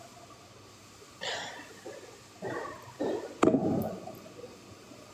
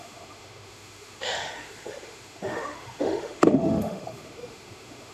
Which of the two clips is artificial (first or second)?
second